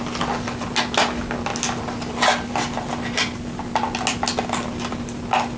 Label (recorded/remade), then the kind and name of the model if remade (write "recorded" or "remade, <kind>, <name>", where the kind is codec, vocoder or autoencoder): recorded